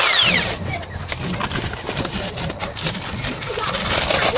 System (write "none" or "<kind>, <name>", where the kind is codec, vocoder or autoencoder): none